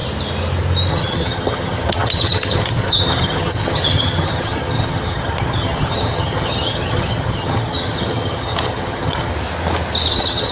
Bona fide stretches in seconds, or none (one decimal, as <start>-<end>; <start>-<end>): 0.0-0.9; 9.3-10.1